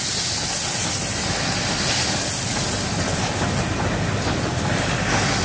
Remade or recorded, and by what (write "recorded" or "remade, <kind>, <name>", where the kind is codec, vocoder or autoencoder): recorded